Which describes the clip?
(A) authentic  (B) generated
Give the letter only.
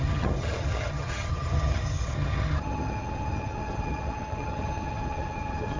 B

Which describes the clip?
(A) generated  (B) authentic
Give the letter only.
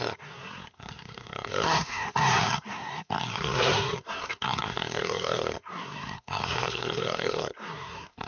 A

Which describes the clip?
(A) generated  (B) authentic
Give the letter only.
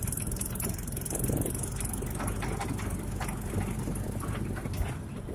B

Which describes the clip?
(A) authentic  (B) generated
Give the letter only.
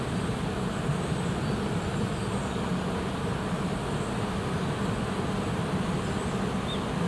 A